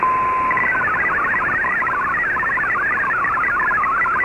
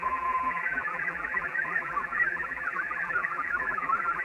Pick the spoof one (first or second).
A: second